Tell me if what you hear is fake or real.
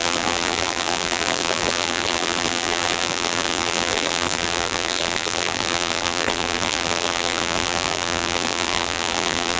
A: fake